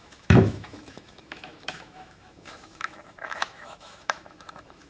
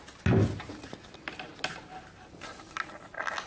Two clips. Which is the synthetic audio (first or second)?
first